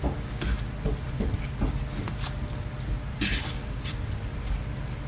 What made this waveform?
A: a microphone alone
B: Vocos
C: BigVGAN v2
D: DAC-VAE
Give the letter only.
A